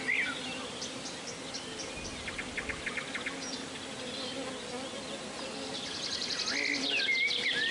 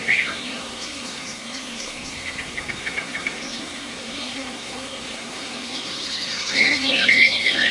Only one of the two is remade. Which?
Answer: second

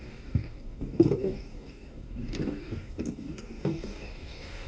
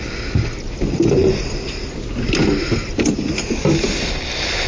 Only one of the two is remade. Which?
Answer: first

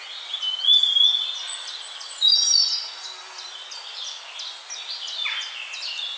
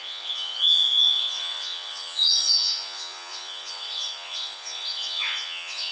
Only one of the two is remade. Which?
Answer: second